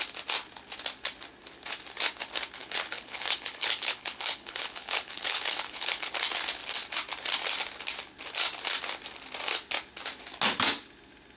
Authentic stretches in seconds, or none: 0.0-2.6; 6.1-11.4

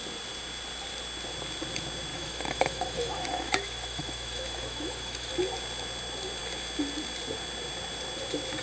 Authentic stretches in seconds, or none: 0.0-2.1; 5.3-8.6

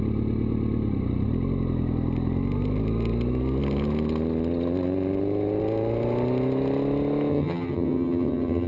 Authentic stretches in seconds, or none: 0.0-7.3

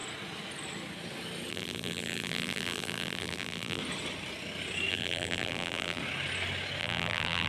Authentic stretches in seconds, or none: 0.0-1.5; 3.8-4.9; 6.0-6.8

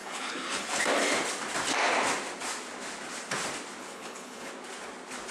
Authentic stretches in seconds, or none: 0.8-3.8; 4.5-5.3

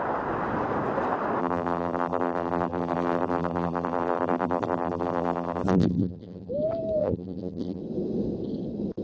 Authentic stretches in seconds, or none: 0.0-1.4; 6.5-7.0; 7.8-9.0

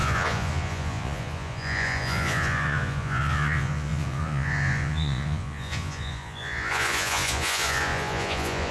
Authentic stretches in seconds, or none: none